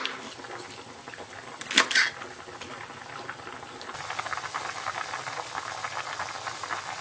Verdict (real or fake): real